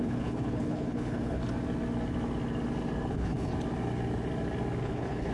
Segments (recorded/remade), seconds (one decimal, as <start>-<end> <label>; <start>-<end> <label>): 0.0-1.4 remade; 1.4-3.1 recorded; 3.1-3.5 remade; 3.5-4.8 recorded; 4.8-5.3 remade